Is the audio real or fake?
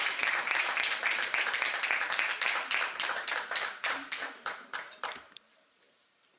fake